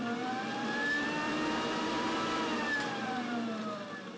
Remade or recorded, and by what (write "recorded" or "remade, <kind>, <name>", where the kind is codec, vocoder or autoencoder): remade, vocoder, BigVGAN v2